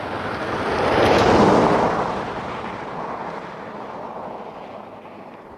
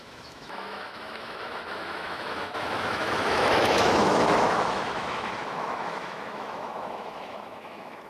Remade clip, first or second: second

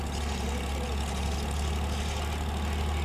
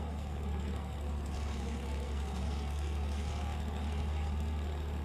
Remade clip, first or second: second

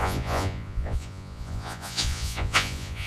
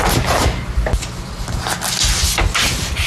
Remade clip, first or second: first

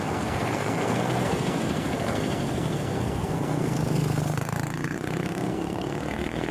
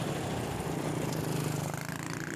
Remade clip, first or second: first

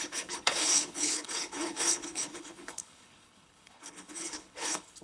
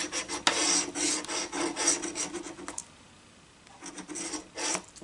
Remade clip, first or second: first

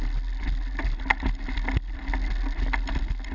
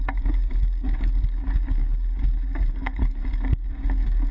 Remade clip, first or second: second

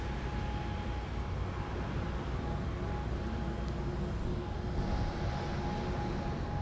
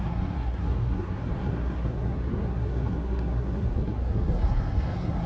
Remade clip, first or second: second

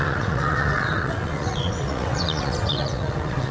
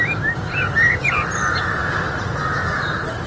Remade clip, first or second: first